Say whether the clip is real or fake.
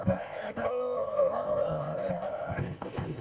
fake